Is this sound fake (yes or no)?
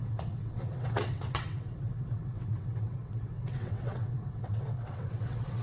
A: yes